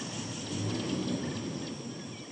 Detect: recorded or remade recorded